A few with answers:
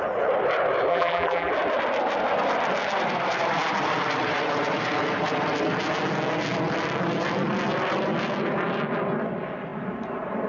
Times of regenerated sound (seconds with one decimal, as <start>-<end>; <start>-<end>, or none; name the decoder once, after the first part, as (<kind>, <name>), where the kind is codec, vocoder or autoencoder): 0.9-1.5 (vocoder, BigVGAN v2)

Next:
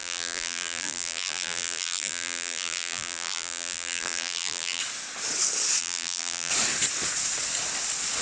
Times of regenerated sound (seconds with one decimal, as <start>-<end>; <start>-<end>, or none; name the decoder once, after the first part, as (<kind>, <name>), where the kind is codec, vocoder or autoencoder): 0.0-4.8 (vocoder, BigVGAN v2); 5.8-6.5

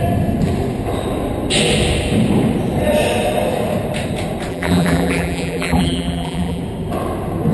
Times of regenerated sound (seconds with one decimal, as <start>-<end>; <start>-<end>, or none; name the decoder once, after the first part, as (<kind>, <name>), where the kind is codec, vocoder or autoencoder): 4.5-6.6 (vocoder, BigVGAN v2)

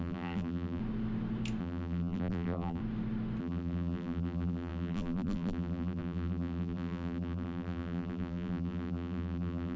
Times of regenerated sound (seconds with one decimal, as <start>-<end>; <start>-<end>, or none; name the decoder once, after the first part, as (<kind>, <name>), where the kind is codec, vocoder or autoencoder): 0.0-0.8 (vocoder, BigVGAN v2); 1.6-2.8; 3.4-9.8

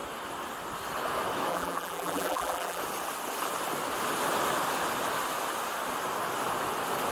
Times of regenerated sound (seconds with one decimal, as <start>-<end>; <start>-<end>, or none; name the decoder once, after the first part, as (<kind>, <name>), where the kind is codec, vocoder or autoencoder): 1.5-2.8 (vocoder, BigVGAN v2)

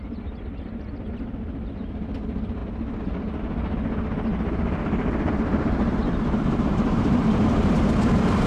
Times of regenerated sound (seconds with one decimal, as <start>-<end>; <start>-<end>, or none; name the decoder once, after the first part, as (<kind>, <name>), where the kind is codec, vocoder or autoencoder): 4.3-7.4 (vocoder, BigVGAN v2)

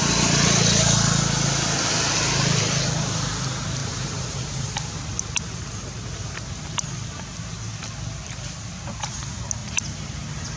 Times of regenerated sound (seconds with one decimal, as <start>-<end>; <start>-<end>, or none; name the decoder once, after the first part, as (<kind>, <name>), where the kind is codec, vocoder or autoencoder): 3.8-4.3 (vocoder, BigVGAN v2); 9.6-10.6